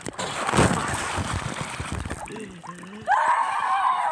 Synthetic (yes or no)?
no